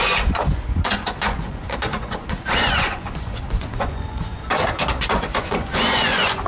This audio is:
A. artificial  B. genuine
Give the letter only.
A